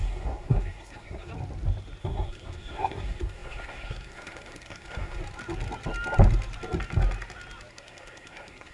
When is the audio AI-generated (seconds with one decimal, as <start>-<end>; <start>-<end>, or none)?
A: 0.0-1.3; 2.0-5.2; 7.7-8.7

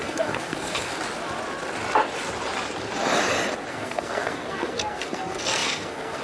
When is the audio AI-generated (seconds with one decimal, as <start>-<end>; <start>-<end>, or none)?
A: 0.0-0.9; 3.7-6.2